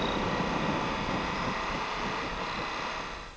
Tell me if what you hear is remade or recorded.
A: recorded